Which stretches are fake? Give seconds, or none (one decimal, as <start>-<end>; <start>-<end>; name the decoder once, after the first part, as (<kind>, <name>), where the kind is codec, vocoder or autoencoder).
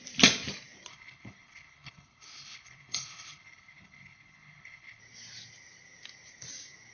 0.9-5.0 (codec, HILCodec)